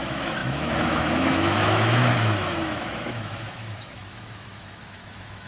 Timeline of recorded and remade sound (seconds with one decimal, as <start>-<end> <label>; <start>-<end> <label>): 0.0-5.5 remade